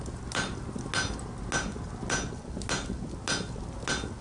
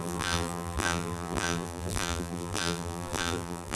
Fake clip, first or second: second